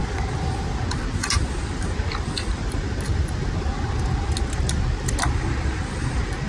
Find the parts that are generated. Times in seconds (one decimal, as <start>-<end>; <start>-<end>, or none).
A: none

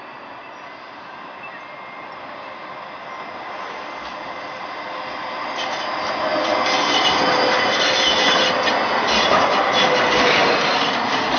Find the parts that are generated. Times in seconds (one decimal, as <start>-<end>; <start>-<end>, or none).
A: none

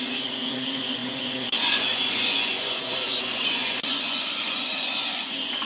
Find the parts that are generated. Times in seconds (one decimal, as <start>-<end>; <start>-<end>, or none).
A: 0.0-5.7

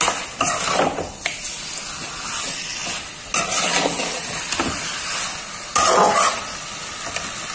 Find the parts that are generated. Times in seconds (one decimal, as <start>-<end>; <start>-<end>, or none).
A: none

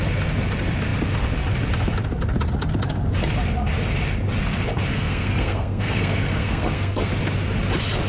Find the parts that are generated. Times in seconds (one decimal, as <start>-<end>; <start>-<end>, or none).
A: 4.9-7.1

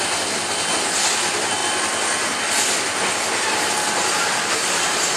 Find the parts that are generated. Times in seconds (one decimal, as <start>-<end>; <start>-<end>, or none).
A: none